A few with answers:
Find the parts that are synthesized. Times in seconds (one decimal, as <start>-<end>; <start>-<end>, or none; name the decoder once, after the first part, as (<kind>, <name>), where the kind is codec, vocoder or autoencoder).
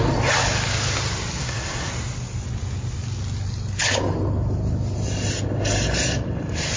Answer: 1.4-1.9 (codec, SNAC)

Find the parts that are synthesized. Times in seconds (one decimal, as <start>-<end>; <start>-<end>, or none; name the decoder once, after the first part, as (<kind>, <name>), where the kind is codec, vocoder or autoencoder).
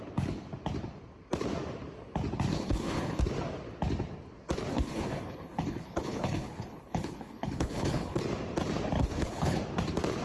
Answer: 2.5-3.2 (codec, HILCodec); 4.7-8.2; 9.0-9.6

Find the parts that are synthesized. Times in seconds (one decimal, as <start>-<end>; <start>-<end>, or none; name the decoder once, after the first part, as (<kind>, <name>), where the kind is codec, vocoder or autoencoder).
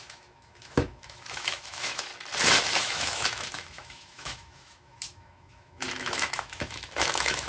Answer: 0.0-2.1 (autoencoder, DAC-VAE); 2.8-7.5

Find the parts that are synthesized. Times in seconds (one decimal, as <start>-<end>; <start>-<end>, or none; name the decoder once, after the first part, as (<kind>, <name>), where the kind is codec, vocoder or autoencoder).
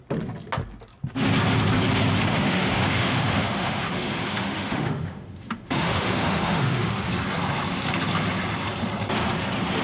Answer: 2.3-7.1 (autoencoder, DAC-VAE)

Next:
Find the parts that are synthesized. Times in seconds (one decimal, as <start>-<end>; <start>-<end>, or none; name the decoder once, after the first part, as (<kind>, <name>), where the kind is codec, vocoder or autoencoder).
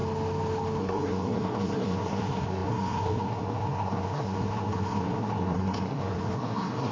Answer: 0.8-6.9 (codec, SNAC)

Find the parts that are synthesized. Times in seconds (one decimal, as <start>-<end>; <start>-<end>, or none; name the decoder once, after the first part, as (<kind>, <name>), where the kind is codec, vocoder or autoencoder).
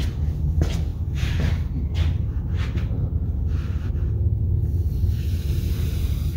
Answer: none